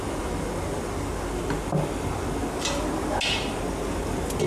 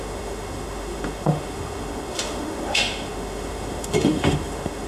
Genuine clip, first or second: first